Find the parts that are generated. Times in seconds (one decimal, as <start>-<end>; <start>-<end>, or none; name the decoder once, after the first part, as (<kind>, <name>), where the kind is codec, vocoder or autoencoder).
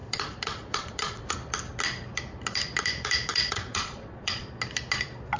0.0-1.3 (vocoder, Vocos); 3.3-4.6